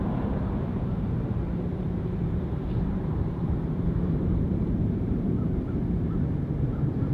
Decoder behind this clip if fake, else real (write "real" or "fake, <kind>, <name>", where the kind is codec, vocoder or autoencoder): fake, vocoder, BigVGAN v2